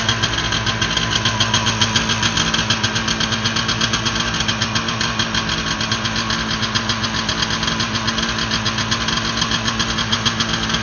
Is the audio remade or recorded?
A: recorded